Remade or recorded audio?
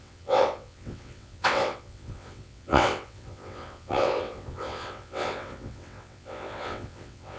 remade